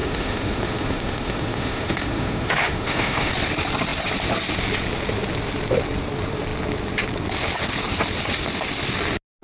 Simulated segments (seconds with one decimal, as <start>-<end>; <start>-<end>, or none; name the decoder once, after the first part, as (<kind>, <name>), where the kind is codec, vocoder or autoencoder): 0.0-3.3 (autoencoder, DAC-VAE)